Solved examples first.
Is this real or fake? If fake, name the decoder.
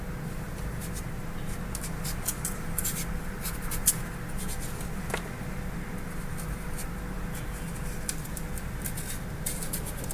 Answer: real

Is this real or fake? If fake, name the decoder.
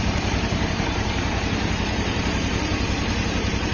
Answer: fake, vocoder, BigVGAN v2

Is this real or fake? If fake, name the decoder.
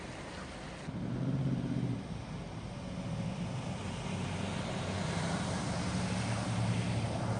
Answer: real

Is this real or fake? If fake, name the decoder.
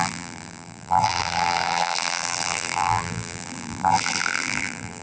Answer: fake, vocoder, BigVGAN v2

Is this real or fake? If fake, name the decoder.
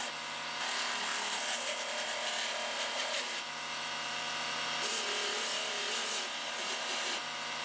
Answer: real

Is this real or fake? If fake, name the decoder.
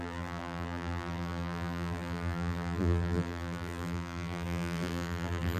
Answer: fake, vocoder, BigVGAN v2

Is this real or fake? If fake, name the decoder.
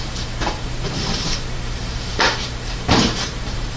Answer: fake, vocoder, BigVGAN v2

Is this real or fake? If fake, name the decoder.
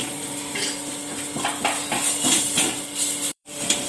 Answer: fake, vocoder, BigVGAN v2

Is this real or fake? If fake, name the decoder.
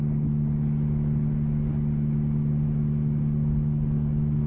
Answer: real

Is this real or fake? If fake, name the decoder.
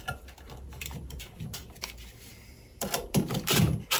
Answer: fake, vocoder, BigVGAN v2